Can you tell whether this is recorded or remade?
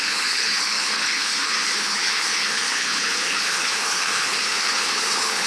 remade